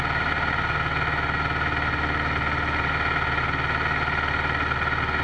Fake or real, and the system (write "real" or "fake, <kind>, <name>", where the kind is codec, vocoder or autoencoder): real